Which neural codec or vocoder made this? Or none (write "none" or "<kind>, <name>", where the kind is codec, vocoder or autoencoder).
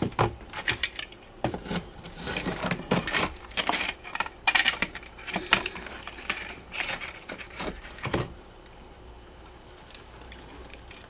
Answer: vocoder, BigVGAN v2